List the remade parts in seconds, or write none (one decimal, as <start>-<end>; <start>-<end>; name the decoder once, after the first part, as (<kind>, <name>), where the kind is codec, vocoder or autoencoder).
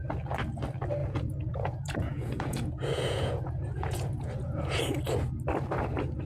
1.0-4.8 (vocoder, Vocos)